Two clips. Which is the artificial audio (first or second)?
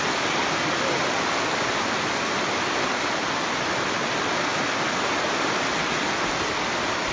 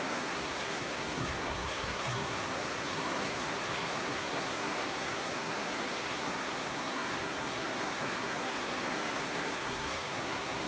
second